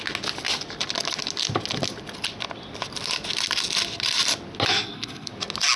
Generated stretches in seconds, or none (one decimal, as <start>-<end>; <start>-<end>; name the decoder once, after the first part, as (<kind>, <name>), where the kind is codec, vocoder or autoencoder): 4.7-5.3 (codec, SNAC)